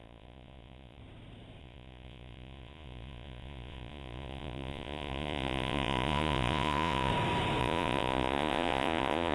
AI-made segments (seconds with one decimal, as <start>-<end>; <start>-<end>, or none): 0.0-1.0; 1.6-7.1; 7.6-9.3